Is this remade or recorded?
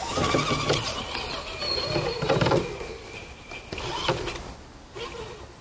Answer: recorded